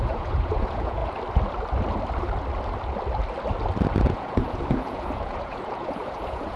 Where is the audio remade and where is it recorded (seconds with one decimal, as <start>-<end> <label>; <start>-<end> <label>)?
0.0-1.0 remade; 1.0-4.0 recorded; 4.0-6.6 remade